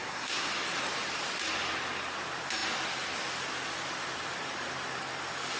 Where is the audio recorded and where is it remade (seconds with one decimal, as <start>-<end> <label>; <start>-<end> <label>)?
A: 0.0-0.5 remade; 0.5-5.6 recorded